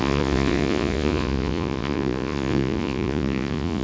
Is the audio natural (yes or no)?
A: no